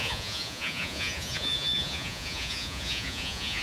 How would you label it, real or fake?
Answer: fake